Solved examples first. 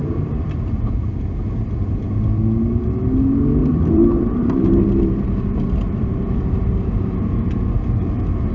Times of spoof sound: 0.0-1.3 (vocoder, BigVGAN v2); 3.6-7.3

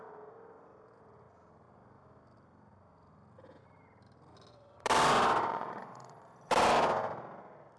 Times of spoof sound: 5.5-6.5 (vocoder, Vocos)

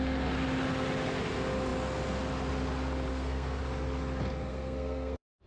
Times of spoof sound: 3.1-3.6 (codec, SNAC); 4.5-5.5